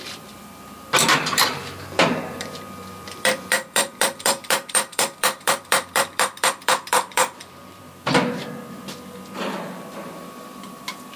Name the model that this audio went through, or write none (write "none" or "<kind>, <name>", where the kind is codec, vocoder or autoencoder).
vocoder, BigVGAN v2